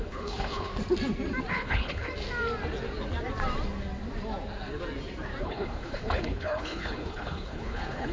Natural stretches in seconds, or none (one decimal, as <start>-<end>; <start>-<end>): 0.7-1.5; 2.1-5.4